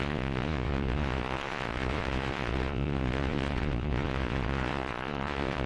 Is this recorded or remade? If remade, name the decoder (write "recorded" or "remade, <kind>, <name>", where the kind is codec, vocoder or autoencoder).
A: remade, vocoder, Vocos